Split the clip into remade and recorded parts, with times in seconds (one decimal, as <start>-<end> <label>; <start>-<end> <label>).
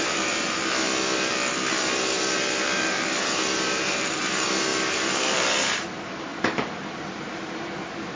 0.0-0.6 remade; 0.6-1.7 recorded; 1.7-6.3 remade; 6.3-7.2 recorded; 7.2-8.2 remade